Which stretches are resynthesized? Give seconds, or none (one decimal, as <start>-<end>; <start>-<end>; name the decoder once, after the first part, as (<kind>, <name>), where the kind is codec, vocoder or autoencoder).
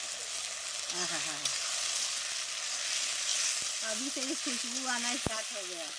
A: none